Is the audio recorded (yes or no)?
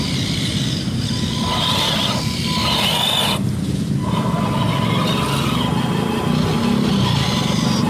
yes